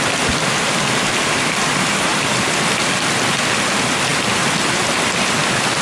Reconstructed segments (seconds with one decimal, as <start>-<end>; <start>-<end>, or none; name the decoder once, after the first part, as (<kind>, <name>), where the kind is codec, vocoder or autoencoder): 2.1-2.8 (vocoder, BigVGAN v2); 4.1-5.8